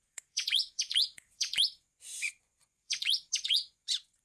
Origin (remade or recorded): remade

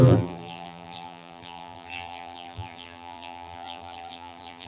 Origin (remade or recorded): remade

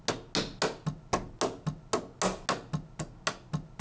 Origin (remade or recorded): recorded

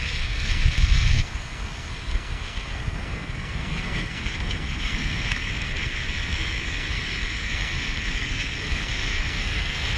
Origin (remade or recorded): remade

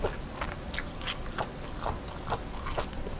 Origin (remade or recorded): recorded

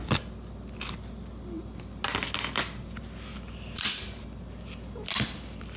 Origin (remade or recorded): recorded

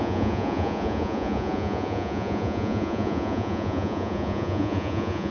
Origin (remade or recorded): remade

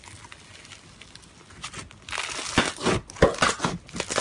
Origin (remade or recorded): recorded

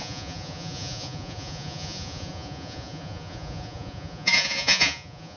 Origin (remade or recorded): remade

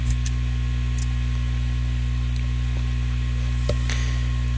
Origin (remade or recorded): recorded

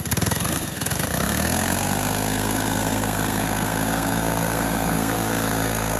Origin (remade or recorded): remade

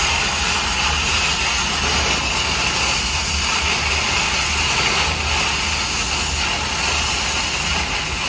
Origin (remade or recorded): recorded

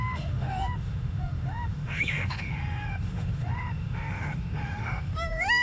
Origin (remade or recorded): remade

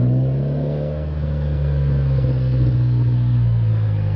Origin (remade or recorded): remade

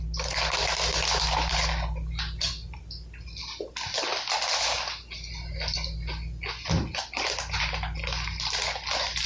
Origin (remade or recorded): recorded